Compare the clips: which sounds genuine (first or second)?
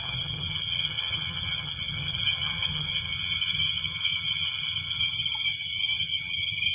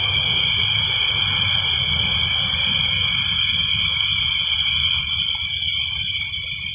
second